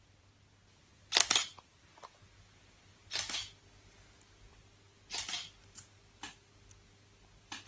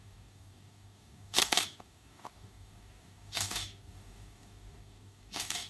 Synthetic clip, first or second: second